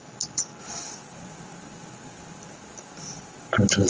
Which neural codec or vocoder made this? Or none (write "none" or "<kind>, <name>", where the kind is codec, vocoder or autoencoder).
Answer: none